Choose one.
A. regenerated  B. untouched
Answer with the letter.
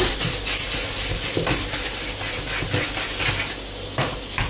B